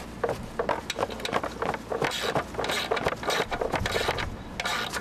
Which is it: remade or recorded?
recorded